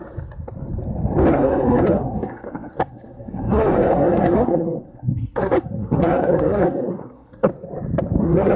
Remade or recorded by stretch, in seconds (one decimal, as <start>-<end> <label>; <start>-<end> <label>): 0.0-1.3 recorded; 1.3-7.5 remade; 7.5-8.2 recorded; 8.2-8.6 remade